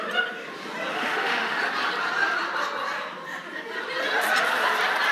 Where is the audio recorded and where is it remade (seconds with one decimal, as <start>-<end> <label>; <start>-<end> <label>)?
0.0-0.9 recorded; 0.9-1.6 remade; 1.6-5.1 recorded